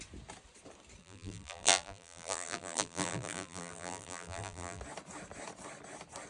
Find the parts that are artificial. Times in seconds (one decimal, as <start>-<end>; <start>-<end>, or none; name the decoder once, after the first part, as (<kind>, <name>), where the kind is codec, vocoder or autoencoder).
1.0-4.8 (vocoder, BigVGAN v2)